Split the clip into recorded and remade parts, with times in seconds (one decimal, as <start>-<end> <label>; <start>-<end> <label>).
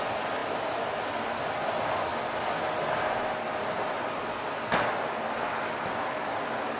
0.0-6.8 recorded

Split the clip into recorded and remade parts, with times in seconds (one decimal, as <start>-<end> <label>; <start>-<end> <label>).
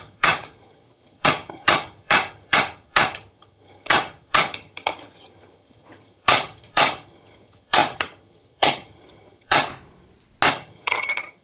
0.0-9.7 remade; 9.7-10.5 recorded; 10.5-11.4 remade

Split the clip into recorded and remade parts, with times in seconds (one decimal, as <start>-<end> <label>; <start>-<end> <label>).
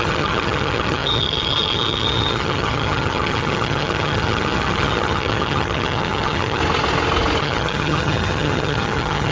0.0-6.6 remade; 6.6-7.4 recorded; 7.4-9.3 remade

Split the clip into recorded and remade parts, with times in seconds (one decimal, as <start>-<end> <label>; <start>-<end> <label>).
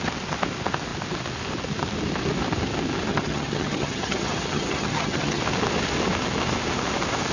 0.0-3.1 recorded; 3.1-5.4 remade; 5.4-7.3 recorded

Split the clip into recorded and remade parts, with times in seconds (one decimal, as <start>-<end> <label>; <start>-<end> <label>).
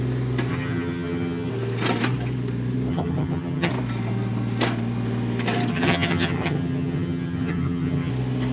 0.0-0.5 recorded; 0.5-1.5 remade; 1.5-2.9 recorded; 2.9-3.7 remade; 3.7-5.7 recorded; 5.7-8.1 remade; 8.1-8.5 recorded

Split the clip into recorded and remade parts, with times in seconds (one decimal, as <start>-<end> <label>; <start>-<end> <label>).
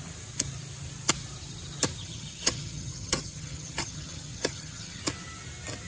0.0-2.0 recorded; 2.0-5.0 remade; 5.0-5.9 recorded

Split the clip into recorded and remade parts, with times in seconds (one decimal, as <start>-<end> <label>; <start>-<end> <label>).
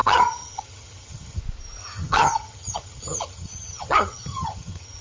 0.0-1.4 remade; 1.4-1.8 recorded; 1.8-5.0 remade